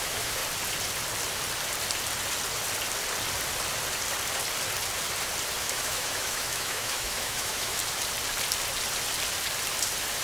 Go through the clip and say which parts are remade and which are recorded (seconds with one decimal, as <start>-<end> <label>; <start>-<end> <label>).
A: 0.0-0.4 remade; 0.4-5.6 recorded; 5.6-7.8 remade; 7.8-10.2 recorded